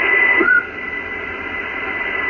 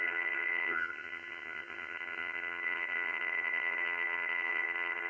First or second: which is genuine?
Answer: first